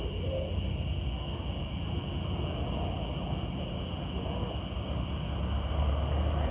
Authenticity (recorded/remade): recorded